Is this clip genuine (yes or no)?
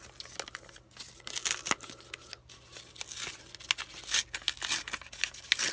yes